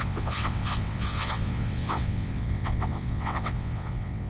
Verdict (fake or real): fake